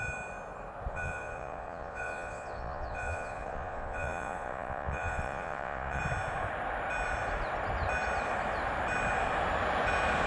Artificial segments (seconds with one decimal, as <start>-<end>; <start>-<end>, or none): 0.9-6.0